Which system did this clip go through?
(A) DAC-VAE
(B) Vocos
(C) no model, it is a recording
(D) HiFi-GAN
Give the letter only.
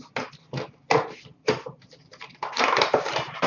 C